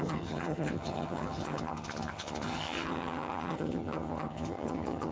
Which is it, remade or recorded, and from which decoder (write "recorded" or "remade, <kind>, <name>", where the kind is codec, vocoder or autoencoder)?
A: remade, vocoder, HiFi-GAN